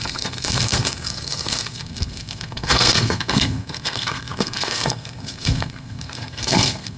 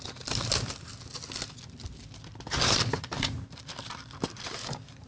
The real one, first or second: second